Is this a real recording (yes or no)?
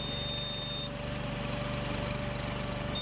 yes